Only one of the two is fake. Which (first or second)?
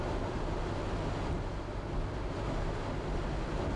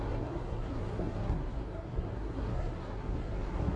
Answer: second